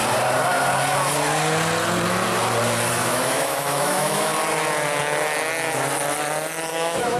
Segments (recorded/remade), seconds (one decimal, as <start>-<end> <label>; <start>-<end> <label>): 0.0-2.9 recorded; 2.9-4.3 remade; 4.3-6.7 recorded; 6.7-7.2 remade